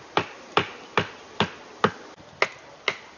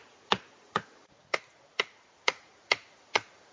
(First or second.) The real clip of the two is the first